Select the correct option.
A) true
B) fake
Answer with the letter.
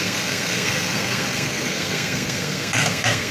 B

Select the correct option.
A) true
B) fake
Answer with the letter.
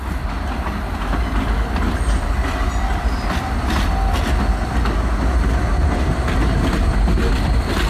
A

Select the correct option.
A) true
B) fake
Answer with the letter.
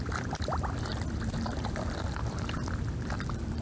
B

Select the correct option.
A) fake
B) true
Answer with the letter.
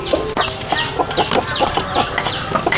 B